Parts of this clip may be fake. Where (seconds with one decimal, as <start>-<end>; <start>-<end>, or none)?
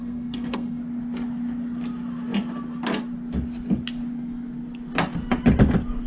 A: 0.0-0.8